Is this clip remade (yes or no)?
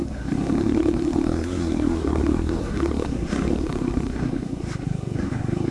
yes